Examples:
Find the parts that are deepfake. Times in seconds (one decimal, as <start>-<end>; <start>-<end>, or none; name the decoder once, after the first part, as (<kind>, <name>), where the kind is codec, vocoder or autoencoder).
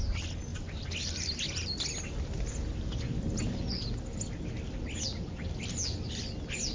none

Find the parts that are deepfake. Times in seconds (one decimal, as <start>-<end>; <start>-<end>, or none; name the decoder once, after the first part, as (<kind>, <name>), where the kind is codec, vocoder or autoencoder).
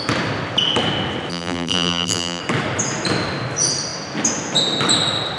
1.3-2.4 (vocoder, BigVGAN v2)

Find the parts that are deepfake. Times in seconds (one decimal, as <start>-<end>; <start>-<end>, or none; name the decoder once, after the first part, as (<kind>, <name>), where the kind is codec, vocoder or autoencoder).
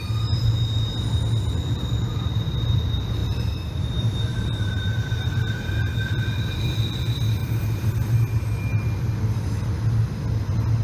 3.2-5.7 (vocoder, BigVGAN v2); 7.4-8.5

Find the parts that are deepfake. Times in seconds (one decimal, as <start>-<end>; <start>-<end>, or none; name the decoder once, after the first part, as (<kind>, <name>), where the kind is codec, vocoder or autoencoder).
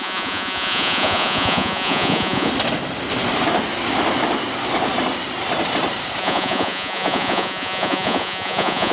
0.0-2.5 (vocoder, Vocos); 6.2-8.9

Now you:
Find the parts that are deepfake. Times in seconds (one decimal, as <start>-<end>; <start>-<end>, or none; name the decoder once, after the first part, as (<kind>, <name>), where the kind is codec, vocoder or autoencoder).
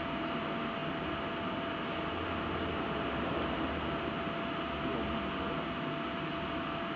none